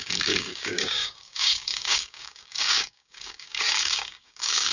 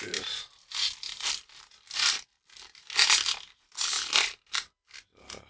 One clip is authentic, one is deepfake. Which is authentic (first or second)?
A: second